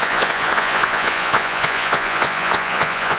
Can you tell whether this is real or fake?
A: fake